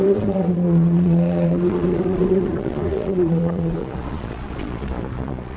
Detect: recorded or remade remade